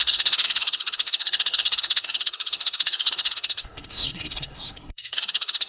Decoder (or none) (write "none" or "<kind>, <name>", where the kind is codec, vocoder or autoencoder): codec, SNAC